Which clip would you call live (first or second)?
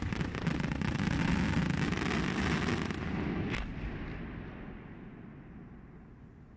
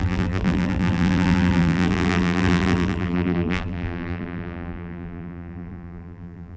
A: first